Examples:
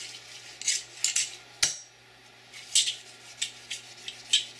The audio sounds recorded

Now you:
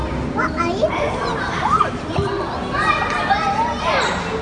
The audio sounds recorded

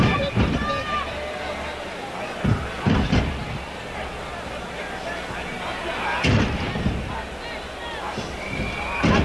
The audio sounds recorded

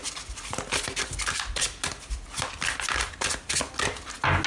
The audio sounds recorded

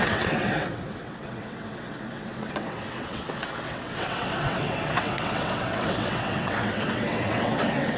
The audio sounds remade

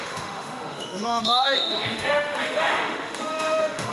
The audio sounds remade